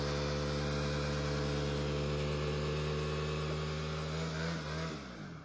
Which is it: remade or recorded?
recorded